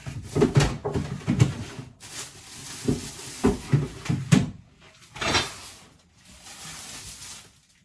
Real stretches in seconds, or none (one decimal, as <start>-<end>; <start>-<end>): 0.0-4.2; 6.6-7.8